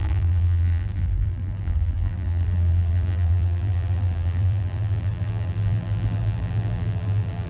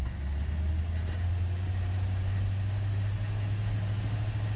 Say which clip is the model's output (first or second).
first